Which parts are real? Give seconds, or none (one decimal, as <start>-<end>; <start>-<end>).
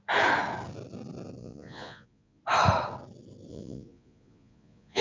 0.0-1.4; 2.4-3.5